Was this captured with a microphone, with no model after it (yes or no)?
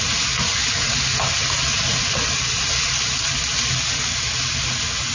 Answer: yes